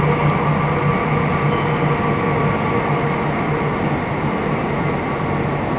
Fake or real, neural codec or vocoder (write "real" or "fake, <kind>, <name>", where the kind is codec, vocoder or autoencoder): real